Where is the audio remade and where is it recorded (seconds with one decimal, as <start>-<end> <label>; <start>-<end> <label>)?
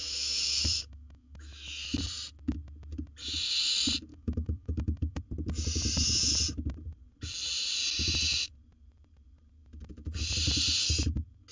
0.0-2.0 remade; 2.0-4.1 recorded; 4.1-5.2 remade; 5.2-11.5 recorded